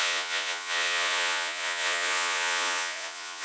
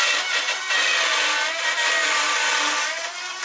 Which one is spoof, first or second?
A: first